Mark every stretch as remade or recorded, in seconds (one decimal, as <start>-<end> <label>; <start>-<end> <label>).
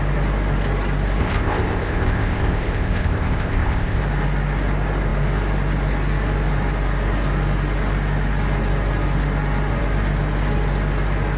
0.0-1.2 recorded; 1.2-4.0 remade; 4.0-11.4 recorded